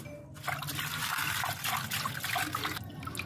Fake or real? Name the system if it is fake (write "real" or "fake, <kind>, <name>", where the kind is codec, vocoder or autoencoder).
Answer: real